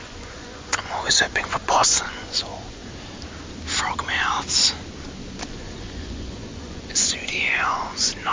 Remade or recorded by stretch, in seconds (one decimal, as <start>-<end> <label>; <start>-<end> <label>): 0.0-2.8 remade; 2.8-5.5 recorded; 5.5-8.3 remade